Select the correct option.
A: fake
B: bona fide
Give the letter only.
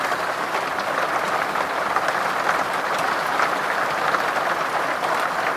B